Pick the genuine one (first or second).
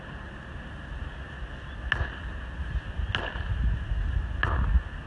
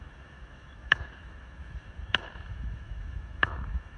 first